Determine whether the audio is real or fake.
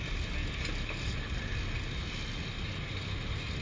real